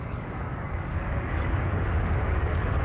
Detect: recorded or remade remade